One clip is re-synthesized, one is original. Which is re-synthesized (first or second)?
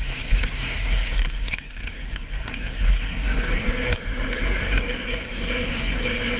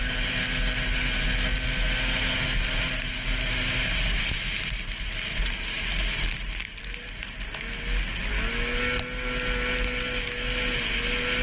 first